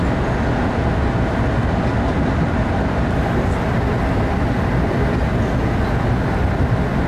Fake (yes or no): no